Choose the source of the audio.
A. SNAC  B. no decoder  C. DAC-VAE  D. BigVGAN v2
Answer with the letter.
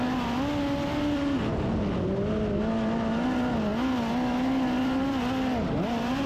B